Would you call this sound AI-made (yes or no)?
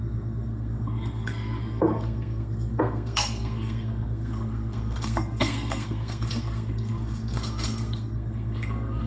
yes